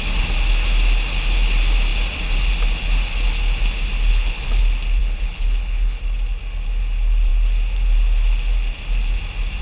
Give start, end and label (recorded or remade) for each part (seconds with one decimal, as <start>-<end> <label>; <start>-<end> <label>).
0.0-4.1 recorded; 4.1-4.6 remade; 4.6-5.0 recorded; 5.0-6.0 remade; 6.0-9.6 recorded